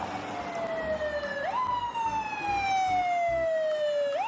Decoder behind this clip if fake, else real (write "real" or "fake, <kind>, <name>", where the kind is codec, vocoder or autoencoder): real